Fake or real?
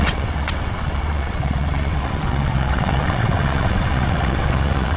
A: fake